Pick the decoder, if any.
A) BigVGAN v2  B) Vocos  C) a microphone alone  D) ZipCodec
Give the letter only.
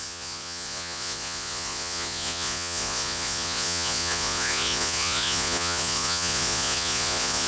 B